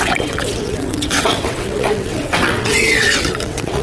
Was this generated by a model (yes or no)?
yes